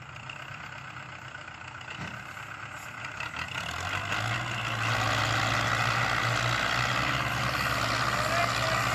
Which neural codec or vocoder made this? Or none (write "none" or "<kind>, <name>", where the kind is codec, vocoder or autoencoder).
none